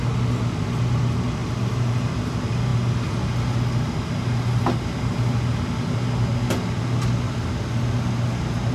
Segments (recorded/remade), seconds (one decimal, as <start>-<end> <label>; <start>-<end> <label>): 0.0-8.7 recorded